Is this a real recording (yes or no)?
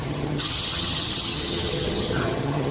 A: no